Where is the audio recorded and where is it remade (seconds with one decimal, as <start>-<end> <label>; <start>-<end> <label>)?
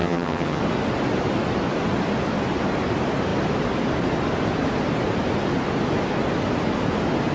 0.0-0.6 remade; 0.6-7.3 recorded